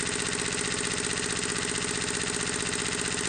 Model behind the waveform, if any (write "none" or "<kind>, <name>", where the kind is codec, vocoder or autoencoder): none